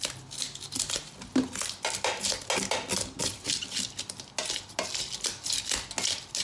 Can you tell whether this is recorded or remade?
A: recorded